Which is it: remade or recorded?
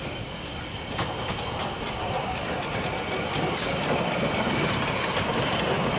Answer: recorded